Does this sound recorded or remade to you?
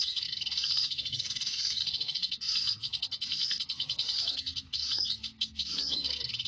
remade